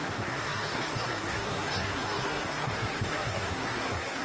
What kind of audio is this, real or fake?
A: fake